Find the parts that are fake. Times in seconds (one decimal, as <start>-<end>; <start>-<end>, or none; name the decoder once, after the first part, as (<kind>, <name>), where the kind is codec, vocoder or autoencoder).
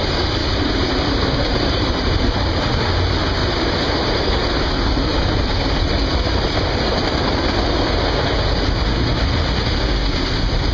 0.4-2.6 (vocoder, BigVGAN v2); 3.4-4.3